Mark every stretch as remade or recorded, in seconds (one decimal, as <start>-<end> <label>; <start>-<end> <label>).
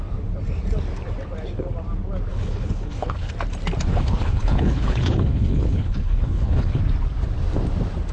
0.0-2.3 recorded; 2.3-3.3 remade; 3.3-3.9 recorded; 3.9-6.8 remade; 6.8-8.1 recorded